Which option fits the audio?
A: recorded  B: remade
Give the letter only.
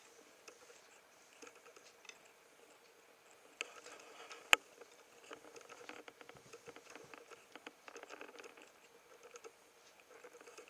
A